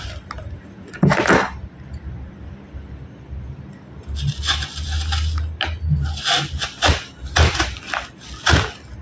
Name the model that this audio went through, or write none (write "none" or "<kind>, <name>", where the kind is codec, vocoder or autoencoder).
none